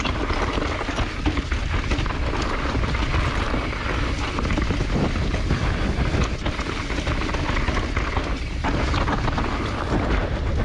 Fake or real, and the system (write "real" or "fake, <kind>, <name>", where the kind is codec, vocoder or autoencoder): real